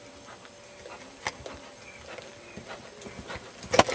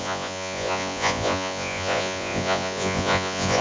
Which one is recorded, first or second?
first